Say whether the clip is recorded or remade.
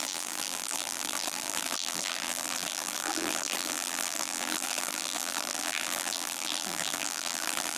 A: remade